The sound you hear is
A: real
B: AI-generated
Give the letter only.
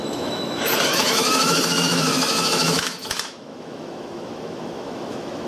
B